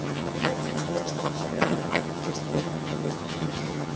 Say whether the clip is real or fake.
fake